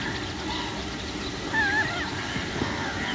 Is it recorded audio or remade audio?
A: recorded